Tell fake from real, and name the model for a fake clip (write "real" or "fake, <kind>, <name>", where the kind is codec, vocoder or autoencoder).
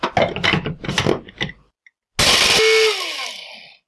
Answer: real